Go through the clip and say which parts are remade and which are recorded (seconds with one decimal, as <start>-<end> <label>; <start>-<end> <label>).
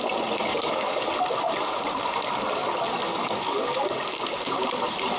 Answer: 0.0-0.5 recorded; 0.5-1.1 remade; 1.1-3.1 recorded; 3.1-4.0 remade; 4.0-5.2 recorded